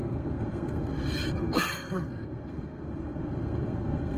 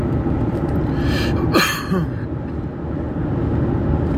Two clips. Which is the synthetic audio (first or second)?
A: first